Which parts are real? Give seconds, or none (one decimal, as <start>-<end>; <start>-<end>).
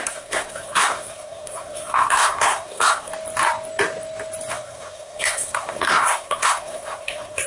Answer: 3.1-4.5